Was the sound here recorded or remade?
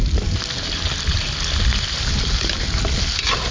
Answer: recorded